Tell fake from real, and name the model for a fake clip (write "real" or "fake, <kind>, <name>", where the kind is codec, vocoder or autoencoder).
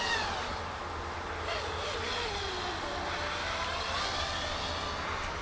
real